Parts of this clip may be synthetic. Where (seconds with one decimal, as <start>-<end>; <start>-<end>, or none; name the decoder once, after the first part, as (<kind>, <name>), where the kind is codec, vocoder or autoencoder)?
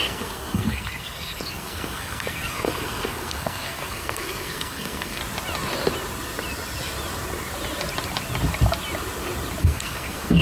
0.0-5.2 (codec, SNAC); 9.6-10.4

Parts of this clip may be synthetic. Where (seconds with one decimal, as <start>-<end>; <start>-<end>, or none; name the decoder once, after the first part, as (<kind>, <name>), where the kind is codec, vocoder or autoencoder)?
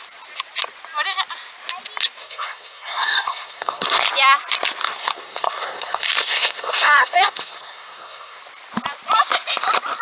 2.2-4.1 (codec, SNAC); 4.8-8.4